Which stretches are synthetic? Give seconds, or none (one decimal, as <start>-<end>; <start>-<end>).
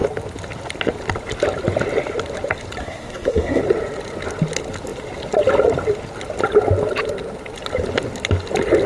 2.8-3.6